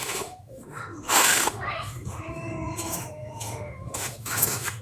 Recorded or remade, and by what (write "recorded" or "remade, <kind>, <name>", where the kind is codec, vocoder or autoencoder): remade, autoencoder, DAC-VAE